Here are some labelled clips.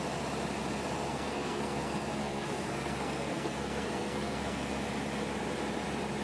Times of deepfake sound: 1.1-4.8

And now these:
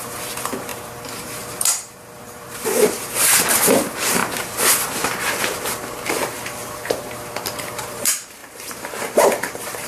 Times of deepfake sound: 0.0-4.2; 6.1-9.9

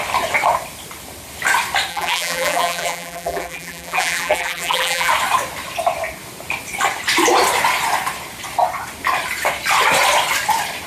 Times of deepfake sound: 1.9-5.1

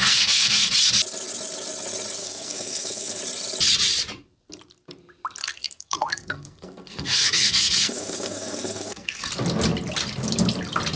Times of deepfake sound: 0.0-0.7; 2.2-3.2; 5.4-9.3

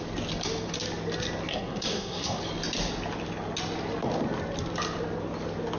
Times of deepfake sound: 1.5-2.4

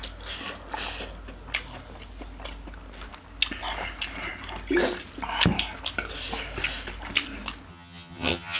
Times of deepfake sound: 7.7-8.6

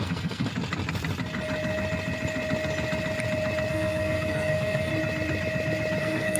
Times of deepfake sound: 0.0-0.5; 3.7-4.9; 6.0-6.4

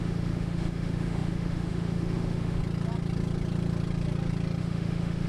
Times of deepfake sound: 0.0-2.6; 4.6-5.3